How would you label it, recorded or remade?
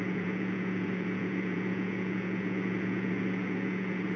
remade